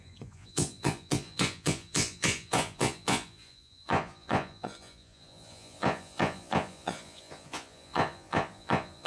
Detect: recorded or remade remade